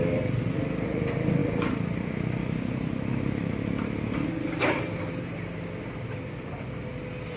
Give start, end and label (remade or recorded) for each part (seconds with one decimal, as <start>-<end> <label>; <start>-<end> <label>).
0.0-7.4 recorded